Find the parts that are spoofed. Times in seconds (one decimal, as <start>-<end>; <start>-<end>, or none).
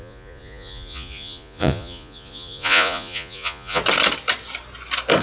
0.0-3.8